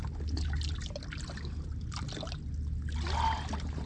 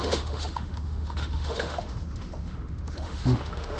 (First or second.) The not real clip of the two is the second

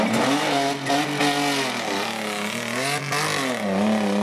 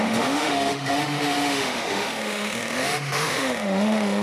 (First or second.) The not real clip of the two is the second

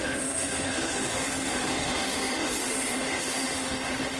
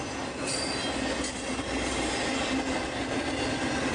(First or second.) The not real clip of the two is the first